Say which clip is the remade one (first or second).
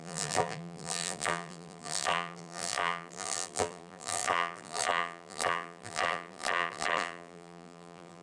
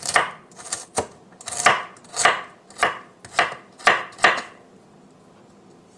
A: first